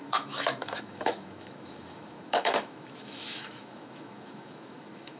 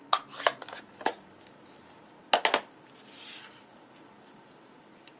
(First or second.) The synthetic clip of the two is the first